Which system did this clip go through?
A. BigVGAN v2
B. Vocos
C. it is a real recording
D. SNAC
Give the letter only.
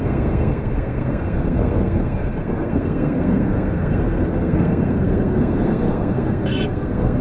D